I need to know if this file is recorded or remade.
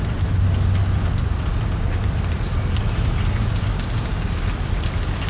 recorded